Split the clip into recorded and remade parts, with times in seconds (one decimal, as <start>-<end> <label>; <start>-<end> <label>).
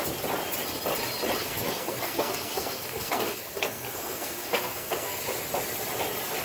0.0-1.4 recorded; 1.4-5.2 remade; 5.2-6.4 recorded